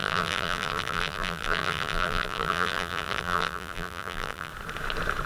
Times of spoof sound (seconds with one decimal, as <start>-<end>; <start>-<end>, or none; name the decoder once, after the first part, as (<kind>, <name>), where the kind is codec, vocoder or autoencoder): 0.0-4.5 (vocoder, BigVGAN v2)